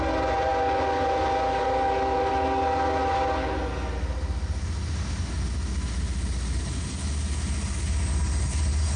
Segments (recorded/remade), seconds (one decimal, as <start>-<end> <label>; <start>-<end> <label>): 0.0-9.0 recorded